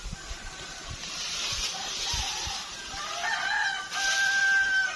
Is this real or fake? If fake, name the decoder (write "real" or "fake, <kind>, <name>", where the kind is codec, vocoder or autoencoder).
fake, vocoder, BigVGAN v2